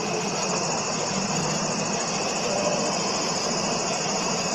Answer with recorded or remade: recorded